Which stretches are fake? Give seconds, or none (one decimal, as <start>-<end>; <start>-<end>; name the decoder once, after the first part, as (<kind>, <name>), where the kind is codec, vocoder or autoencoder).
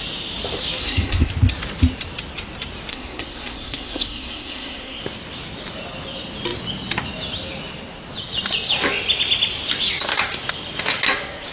0.8-1.3 (codec, SNAC); 2.9-5.0